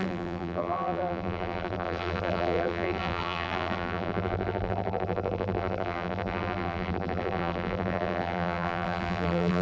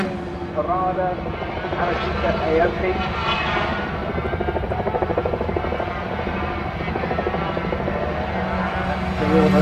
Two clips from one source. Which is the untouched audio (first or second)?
second